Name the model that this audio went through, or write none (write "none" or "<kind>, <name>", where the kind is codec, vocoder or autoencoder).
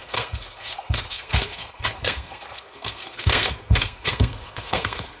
codec, SNAC